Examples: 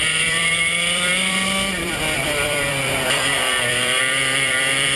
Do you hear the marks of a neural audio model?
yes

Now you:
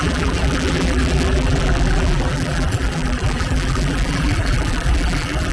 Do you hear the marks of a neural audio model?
yes